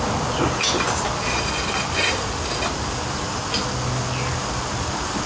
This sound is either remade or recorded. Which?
recorded